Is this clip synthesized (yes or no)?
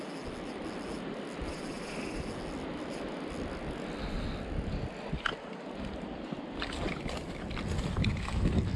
no